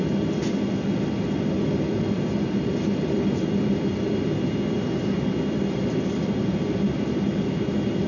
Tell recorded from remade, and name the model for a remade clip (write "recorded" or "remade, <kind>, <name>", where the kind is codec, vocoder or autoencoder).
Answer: recorded